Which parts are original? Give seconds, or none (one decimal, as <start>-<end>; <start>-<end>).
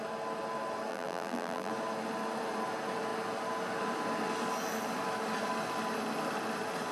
0.0-0.9; 1.7-6.9